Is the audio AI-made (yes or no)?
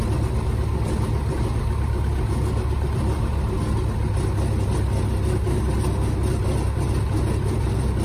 no